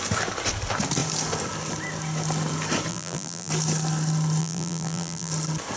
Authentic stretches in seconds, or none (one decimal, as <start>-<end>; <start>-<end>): 0.0-2.9; 3.5-4.4; 5.3-5.8